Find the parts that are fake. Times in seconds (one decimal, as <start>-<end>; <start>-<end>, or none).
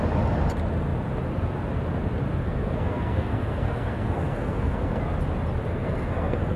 2.4-5.0; 5.7-6.6